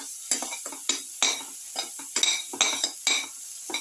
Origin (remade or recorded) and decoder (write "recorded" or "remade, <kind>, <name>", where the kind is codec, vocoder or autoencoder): recorded